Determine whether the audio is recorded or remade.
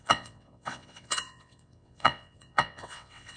remade